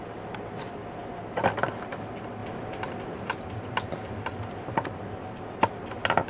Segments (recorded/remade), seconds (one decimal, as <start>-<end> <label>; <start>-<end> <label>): 0.0-6.3 recorded